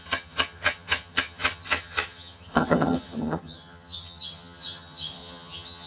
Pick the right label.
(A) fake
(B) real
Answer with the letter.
A